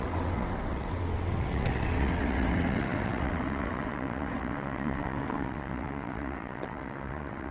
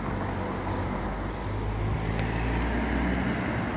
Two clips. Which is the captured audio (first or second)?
second